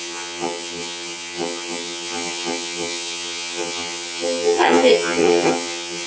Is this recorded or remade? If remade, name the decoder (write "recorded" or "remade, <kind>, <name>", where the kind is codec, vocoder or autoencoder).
remade, vocoder, HiFi-GAN